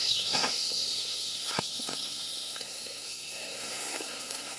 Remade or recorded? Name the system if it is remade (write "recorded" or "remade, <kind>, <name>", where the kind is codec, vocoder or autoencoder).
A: remade, codec, SNAC